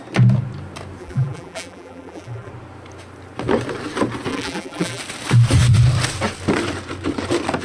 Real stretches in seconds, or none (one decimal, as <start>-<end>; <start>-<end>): 0.0-1.0; 2.5-4.3; 5.0-7.6